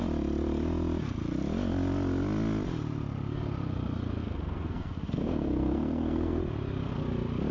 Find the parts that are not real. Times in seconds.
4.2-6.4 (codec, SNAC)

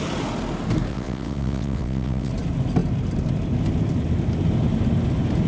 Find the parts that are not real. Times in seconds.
0.9-2.3 (vocoder, WaveNeXt)

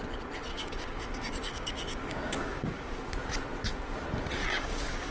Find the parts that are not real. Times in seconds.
0.5-3.0 (codec, DAC); 4.4-5.1

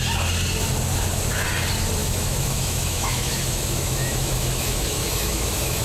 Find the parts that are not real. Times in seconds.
2.0-5.8 (autoencoder, DAC-VAE)